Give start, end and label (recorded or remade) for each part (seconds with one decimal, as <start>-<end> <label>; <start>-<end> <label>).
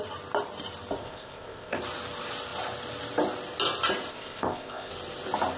0.0-1.0 recorded; 1.0-1.8 remade; 1.8-4.1 recorded; 4.1-4.9 remade; 4.9-5.6 recorded